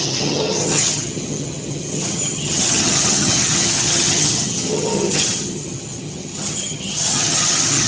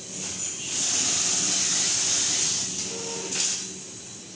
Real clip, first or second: second